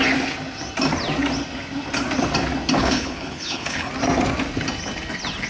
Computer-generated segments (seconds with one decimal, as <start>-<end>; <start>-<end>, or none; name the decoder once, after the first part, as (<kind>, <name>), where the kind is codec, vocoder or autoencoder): 2.8-3.9 (codec, HILCodec)